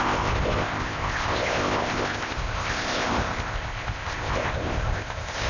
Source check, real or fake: fake